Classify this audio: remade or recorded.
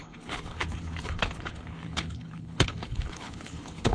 remade